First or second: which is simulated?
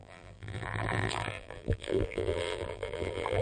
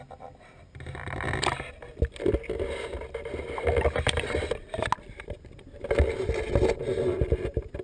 first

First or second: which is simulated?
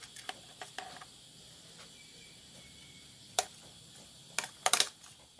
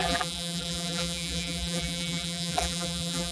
second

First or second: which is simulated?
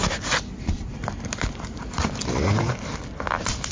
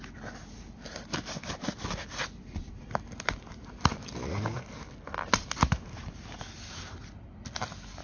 first